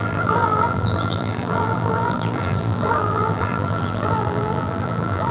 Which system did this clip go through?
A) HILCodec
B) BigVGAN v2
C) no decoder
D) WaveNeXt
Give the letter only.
B